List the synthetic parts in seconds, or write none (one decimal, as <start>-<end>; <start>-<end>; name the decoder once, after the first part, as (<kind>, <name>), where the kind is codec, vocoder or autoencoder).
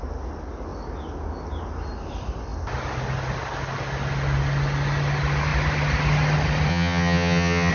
6.7-7.7 (vocoder, HiFi-GAN)